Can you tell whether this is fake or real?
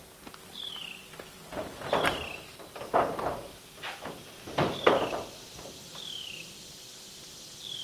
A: real